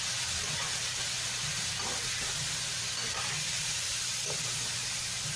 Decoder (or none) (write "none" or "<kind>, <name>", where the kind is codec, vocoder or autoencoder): none